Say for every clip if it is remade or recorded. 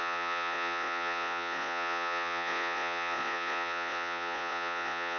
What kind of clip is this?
remade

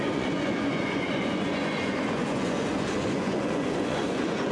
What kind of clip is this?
remade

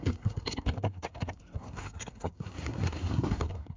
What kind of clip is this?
remade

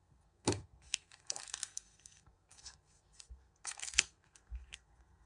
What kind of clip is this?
remade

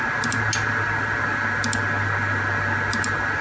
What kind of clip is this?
recorded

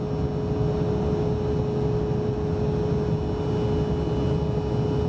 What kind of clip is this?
recorded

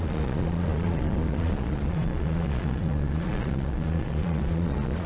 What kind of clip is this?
remade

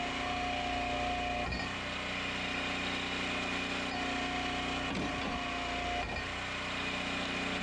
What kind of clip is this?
recorded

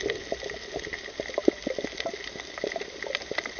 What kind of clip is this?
recorded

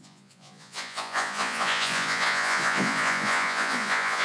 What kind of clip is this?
remade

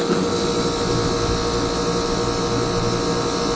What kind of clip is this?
recorded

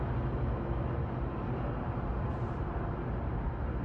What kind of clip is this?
recorded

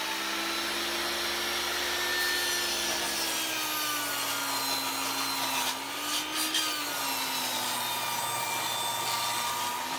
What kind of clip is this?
recorded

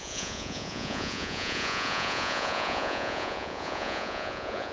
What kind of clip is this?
remade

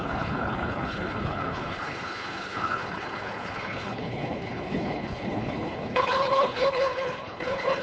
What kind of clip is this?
remade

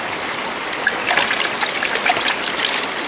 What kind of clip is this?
recorded